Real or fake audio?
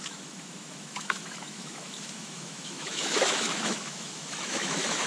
fake